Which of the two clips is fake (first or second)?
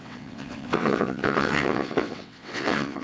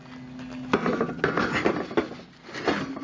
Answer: first